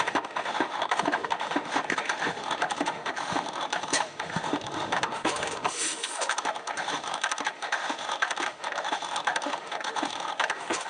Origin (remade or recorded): remade